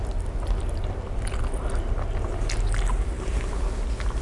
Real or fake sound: real